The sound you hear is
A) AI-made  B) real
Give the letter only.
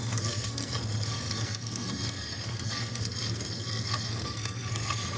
A